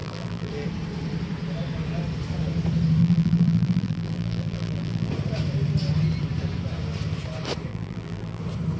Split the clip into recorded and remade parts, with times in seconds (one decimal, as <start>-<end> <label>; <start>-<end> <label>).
0.0-0.5 remade; 0.5-3.0 recorded; 3.0-5.1 remade; 5.1-7.7 recorded; 7.7-8.4 remade; 8.4-8.8 recorded